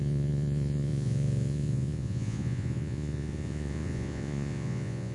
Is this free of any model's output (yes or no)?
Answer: no